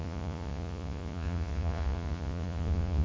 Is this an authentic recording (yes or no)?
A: no